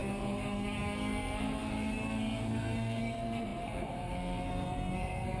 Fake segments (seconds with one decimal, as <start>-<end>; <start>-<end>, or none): 0.0-5.4

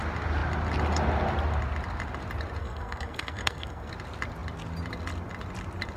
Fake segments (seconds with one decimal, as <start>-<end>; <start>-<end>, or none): 2.6-3.9

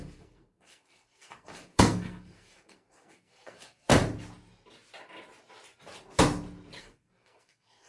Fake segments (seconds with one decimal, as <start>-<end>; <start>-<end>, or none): 0.0-3.9; 6.8-7.9

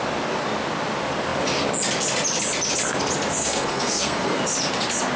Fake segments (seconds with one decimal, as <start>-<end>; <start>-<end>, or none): 3.3-4.4

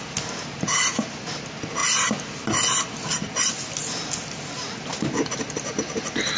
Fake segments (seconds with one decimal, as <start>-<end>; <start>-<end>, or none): none

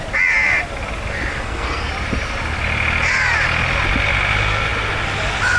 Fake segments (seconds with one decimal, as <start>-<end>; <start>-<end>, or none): 1.3-1.9

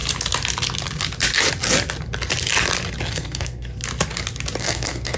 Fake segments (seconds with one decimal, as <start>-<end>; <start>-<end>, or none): 3.1-3.7; 4.6-5.2